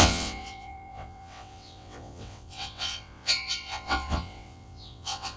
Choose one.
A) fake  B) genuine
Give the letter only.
A